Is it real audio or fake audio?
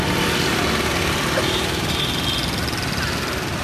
real